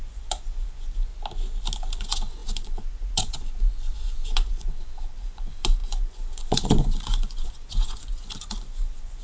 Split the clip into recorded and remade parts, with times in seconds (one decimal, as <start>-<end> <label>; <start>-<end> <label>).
0.0-1.1 remade; 1.1-2.0 recorded; 2.0-9.2 remade

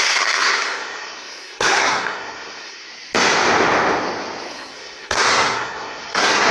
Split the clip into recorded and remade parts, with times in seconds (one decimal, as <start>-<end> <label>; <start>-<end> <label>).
0.0-2.9 remade; 2.9-4.5 recorded; 4.5-6.5 remade